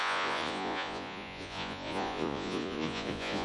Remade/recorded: remade